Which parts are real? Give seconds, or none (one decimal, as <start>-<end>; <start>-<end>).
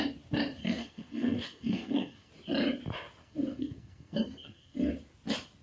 0.0-0.6; 2.3-3.2; 4.9-5.6